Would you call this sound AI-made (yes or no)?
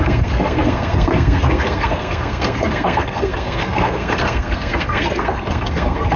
yes